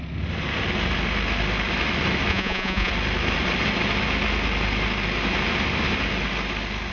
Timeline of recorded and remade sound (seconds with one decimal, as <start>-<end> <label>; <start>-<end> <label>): 0.0-2.3 recorded; 2.3-2.9 remade; 2.9-6.9 recorded